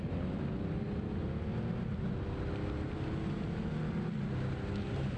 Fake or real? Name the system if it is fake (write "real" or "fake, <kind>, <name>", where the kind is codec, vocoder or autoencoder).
real